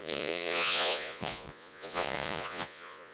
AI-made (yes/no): yes